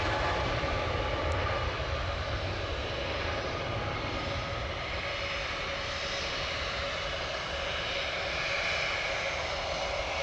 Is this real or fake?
real